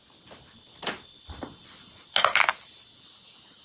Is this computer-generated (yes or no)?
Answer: no